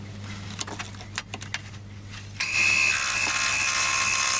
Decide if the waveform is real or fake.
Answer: real